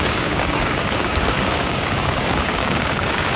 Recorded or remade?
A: remade